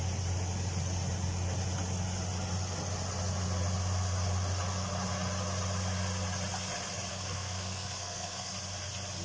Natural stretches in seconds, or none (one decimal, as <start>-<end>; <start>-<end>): 0.0-7.1; 8.5-9.2